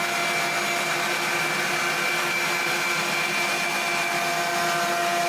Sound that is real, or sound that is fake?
real